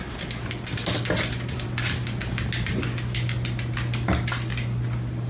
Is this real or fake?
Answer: real